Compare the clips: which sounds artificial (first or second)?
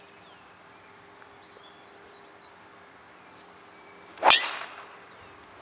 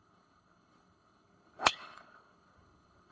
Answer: second